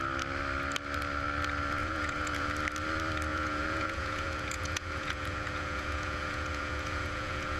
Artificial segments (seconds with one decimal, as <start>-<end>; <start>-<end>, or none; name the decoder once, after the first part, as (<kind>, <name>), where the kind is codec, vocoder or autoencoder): 1.8-2.5 (vocoder, Vocos); 3.3-7.6